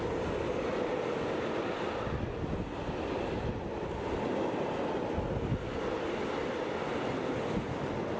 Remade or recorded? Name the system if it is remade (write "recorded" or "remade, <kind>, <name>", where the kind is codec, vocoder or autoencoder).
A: recorded